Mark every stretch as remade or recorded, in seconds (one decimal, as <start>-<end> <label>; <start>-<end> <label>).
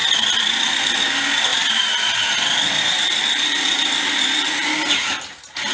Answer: 0.0-1.5 recorded; 1.5-4.9 remade; 4.9-5.7 recorded